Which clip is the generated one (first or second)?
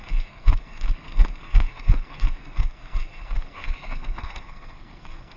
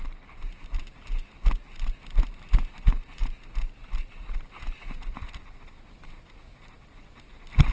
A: first